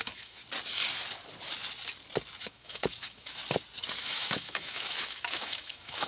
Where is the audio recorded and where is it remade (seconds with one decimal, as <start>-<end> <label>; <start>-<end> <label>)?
0.0-0.4 remade; 0.4-2.4 recorded; 2.4-3.4 remade; 3.4-4.0 recorded; 4.0-6.1 remade